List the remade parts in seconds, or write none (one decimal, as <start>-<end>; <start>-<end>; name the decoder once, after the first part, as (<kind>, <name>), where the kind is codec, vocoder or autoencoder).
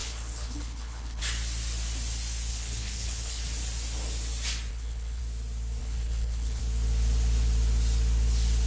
0.0-1.2 (codec, HILCodec); 2.5-3.4; 4.7-5.2; 5.8-6.6